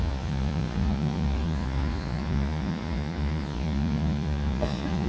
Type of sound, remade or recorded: remade